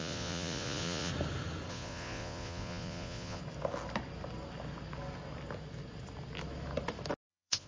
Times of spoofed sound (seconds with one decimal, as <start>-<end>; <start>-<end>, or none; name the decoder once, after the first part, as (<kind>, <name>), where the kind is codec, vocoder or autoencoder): 0.0-1.1 (vocoder, Vocos); 1.7-3.4; 7.3-7.7